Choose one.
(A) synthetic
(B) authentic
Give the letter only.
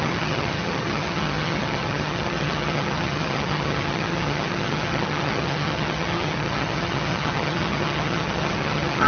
A